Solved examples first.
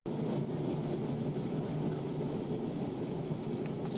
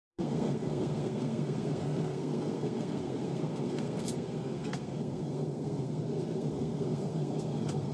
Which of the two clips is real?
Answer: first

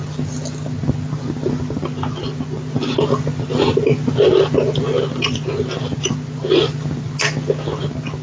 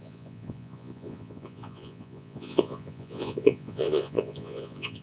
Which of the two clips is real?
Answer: first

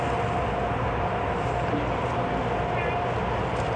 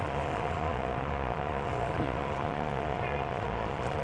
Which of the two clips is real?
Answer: first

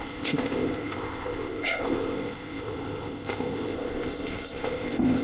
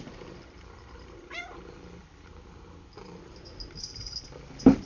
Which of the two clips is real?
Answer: second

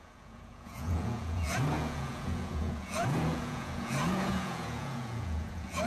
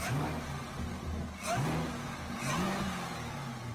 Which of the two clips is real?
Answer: second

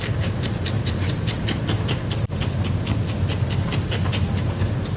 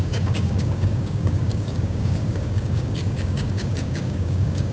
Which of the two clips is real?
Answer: first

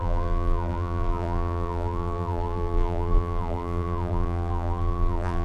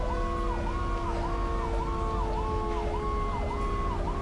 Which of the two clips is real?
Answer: second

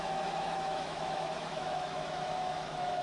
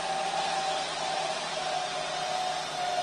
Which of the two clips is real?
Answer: second